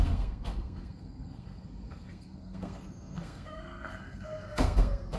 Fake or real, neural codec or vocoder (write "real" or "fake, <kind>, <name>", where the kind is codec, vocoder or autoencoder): fake, codec, SNAC